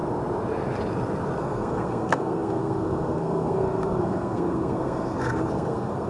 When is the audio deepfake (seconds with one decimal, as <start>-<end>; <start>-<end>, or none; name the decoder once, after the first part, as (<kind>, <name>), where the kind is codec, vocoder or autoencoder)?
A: 1.4-6.1 (codec, SNAC)

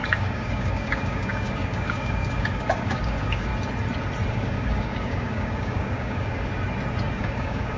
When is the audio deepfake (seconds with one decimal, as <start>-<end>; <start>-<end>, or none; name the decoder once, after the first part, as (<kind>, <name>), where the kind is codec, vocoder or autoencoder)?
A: 0.0-3.5 (codec, DAC); 4.3-6.5; 7.2-7.8